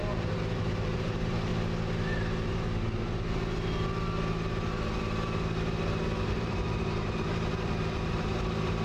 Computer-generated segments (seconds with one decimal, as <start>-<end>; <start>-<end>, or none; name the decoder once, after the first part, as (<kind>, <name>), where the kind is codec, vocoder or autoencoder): 0.0-1.5 (vocoder, BigVGAN v2); 6.3-8.8